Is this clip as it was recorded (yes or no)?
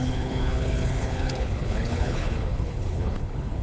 no